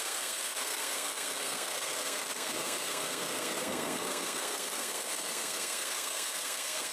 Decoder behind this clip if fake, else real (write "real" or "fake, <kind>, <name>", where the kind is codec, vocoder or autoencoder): fake, codec, SNAC